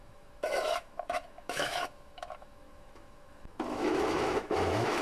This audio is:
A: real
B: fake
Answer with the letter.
B